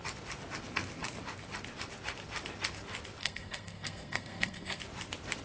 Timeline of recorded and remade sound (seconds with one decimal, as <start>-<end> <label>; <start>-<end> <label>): 0.0-3.2 recorded; 3.2-4.8 remade; 4.8-5.4 recorded